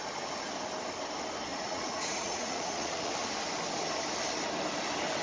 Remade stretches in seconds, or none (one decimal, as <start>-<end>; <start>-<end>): 1.5-3.1